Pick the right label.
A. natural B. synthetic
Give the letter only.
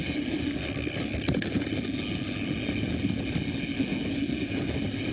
A